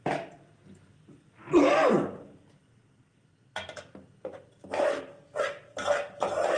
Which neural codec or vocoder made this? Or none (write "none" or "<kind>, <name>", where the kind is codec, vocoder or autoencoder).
none